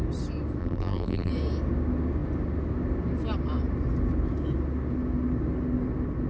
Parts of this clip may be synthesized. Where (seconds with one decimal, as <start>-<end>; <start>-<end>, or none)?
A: 0.6-1.3